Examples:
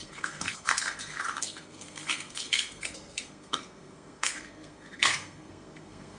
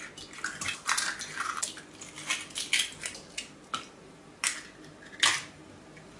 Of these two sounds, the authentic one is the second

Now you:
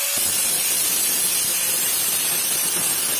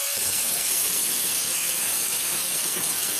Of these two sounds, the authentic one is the first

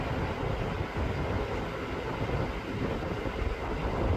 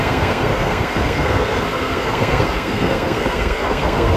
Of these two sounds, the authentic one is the first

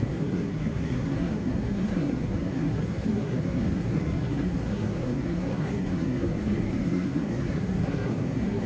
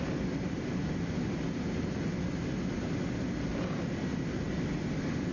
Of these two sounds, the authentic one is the second